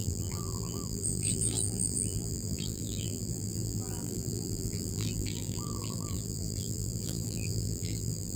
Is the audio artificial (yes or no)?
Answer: yes